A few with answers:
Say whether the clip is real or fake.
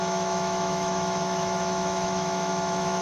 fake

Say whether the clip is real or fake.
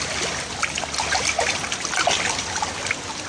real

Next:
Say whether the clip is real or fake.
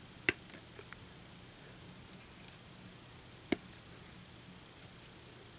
real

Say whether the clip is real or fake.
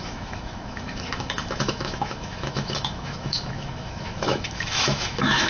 fake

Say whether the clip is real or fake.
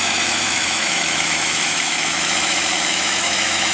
fake